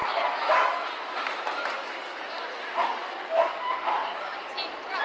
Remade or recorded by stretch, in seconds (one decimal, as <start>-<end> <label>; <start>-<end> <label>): 0.0-4.0 recorded; 4.0-5.0 remade